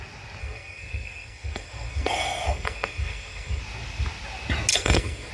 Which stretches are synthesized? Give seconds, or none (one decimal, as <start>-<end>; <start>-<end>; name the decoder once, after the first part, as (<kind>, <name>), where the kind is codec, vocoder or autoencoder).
0.4-3.6 (codec, SNAC); 4.7-5.3